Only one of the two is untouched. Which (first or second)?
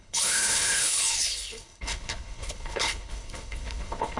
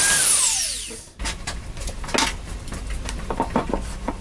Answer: second